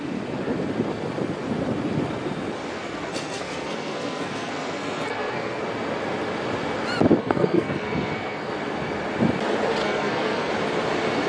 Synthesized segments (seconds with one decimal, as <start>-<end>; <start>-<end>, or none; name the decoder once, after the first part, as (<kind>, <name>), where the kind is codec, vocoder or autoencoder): 2.7-5.6 (codec, SNAC); 7.2-8.5; 9.8-10.5